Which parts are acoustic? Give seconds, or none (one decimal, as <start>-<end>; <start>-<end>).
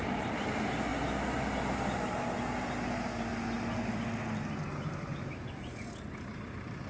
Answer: 0.0-6.9